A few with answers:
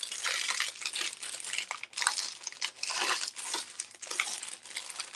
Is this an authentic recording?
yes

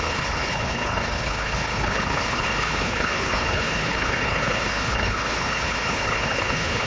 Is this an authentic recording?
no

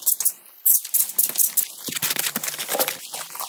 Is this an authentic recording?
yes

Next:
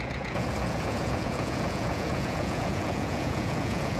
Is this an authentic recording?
no